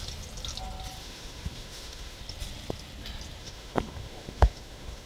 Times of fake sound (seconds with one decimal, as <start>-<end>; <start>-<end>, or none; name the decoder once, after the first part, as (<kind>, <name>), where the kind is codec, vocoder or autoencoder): 1.0-2.2 (autoencoder, DAC-VAE); 3.4-5.1

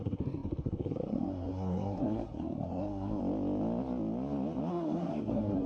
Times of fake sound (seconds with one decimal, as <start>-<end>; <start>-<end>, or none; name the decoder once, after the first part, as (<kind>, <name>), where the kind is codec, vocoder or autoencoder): 0.0-3.2 (codec, SNAC); 4.7-5.7

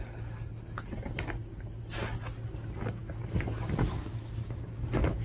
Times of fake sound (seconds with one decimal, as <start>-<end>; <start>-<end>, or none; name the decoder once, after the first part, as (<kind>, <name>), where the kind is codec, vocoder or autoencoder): none

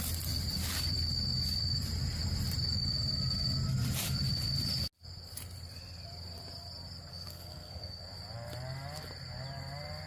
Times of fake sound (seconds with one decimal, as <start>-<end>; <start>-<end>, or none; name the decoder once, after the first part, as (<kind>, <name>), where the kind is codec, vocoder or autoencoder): 7.1-8.0 (codec, SNAC)

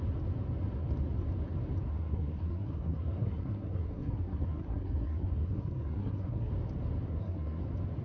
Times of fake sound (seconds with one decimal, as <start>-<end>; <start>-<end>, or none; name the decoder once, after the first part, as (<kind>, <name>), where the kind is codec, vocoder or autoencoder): 1.9-6.5 (codec, SNAC); 7.1-7.6

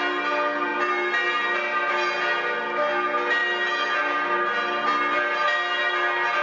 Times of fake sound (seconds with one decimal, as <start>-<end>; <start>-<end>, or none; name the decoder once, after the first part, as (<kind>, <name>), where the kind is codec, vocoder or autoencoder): none

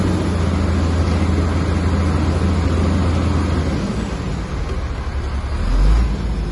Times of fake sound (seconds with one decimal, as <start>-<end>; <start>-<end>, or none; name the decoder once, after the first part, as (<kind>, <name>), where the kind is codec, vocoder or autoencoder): none

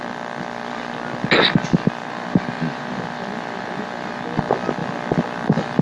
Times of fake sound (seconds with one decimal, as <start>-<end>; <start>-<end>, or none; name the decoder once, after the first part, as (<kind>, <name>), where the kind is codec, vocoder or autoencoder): 2.0-4.2 (vocoder, BigVGAN v2)